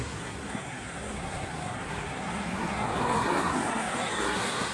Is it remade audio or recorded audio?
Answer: remade